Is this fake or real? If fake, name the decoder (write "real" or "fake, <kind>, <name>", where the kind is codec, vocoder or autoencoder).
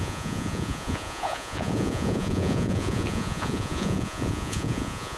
fake, vocoder, Vocos